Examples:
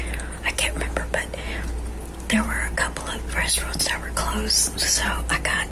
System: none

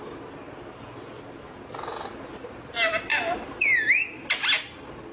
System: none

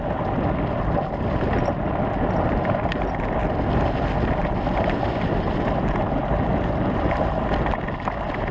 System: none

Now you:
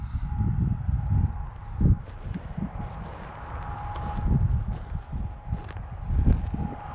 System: none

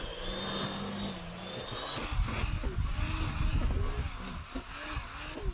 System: none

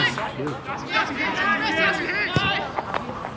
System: none